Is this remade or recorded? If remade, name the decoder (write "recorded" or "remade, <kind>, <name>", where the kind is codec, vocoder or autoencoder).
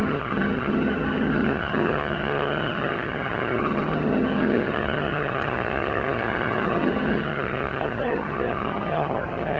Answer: remade, vocoder, HiFi-GAN